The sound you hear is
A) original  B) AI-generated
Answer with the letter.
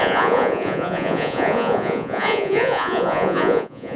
B